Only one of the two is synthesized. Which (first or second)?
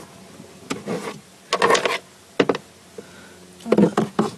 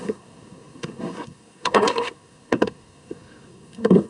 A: second